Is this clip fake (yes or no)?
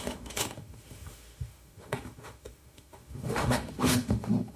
yes